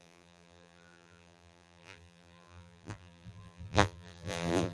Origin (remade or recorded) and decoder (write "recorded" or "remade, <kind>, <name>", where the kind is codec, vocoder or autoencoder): remade, vocoder, BigVGAN v2